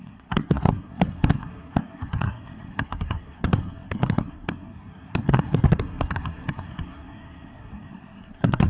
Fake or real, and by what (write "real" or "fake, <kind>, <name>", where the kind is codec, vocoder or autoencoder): fake, codec, SNAC